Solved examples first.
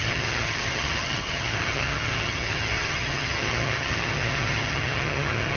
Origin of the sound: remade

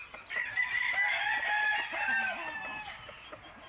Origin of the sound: recorded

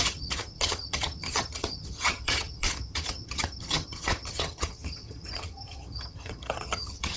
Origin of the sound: remade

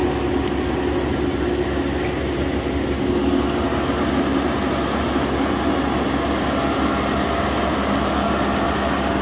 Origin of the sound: recorded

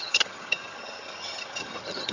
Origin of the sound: remade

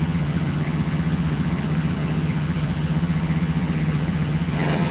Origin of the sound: remade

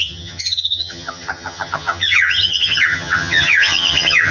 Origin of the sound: remade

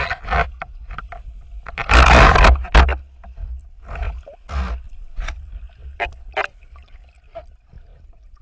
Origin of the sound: recorded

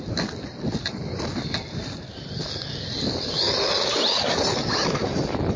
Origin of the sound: recorded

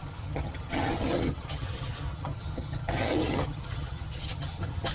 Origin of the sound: remade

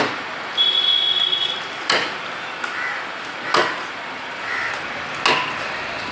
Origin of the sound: recorded